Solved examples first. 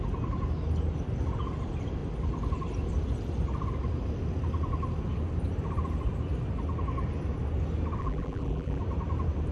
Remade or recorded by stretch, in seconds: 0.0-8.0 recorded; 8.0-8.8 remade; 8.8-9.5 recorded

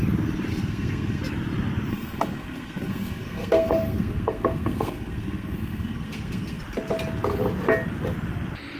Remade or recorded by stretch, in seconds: 0.0-0.5 recorded; 0.5-1.2 remade; 1.2-1.9 recorded; 1.9-6.6 remade; 6.6-8.8 recorded

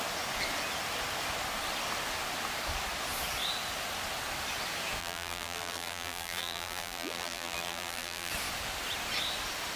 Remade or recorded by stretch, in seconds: 0.0-5.0 recorded; 5.0-8.3 remade; 8.3-9.8 recorded

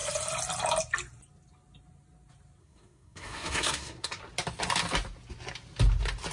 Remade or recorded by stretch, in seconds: 0.0-2.6 recorded; 2.6-4.2 remade; 4.2-6.3 recorded

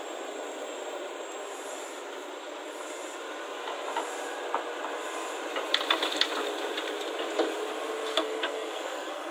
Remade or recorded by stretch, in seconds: 0.0-8.1 recorded; 8.1-9.3 remade

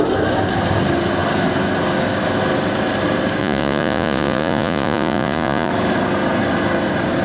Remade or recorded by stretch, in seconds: 0.0-3.4 recorded; 3.4-5.7 remade; 5.7-7.2 recorded

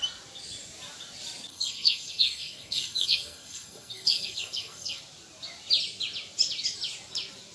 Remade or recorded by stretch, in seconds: 0.0-1.5 recorded; 1.5-5.0 remade; 5.0-7.5 recorded

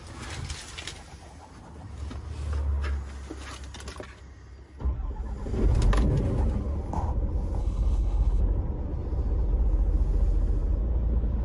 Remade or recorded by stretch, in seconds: 0.0-7.6 recorded; 7.6-8.4 remade; 8.4-11.4 recorded